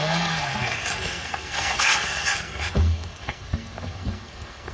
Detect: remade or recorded remade